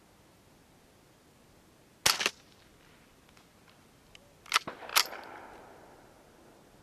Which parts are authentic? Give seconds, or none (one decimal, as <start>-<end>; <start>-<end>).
0.0-6.8